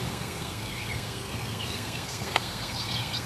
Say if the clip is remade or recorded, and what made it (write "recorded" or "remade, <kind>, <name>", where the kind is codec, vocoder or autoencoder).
remade, codec, SNAC